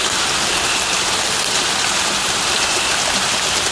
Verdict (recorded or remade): recorded